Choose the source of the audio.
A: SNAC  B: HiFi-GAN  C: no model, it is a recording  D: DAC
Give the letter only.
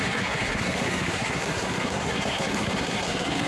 A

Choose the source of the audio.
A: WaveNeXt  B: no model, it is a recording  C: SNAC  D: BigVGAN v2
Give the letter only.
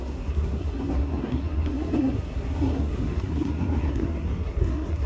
C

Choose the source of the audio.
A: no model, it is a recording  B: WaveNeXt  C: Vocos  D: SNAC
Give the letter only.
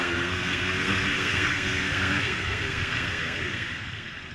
D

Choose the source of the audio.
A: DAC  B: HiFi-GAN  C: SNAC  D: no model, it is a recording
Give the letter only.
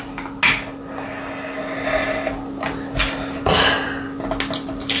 D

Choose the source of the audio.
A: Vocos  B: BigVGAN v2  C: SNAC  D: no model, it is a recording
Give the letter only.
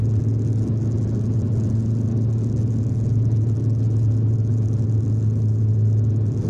D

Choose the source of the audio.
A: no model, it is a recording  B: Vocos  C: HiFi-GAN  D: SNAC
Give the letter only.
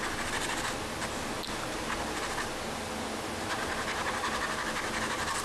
A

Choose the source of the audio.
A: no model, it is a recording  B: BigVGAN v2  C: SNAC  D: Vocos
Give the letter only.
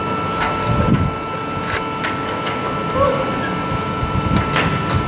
A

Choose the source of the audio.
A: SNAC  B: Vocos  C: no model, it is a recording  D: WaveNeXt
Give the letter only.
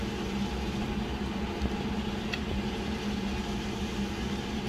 C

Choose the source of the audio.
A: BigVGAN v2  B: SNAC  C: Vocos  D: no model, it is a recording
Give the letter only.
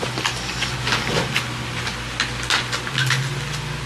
D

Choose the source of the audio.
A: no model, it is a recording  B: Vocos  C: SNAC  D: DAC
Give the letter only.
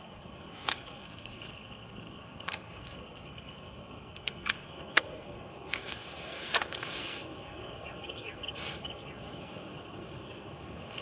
C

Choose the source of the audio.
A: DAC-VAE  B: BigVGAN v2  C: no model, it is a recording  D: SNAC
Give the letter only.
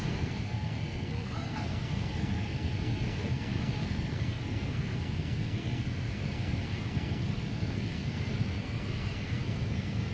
D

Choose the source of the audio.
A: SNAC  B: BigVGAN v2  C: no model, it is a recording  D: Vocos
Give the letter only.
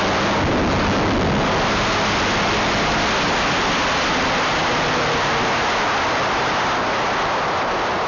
C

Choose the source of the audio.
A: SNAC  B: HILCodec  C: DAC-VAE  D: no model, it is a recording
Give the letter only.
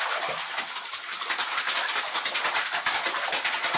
D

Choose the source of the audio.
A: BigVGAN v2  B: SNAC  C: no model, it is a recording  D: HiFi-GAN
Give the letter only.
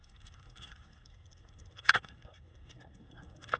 B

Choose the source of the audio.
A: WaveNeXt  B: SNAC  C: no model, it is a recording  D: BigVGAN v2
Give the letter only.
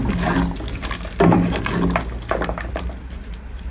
C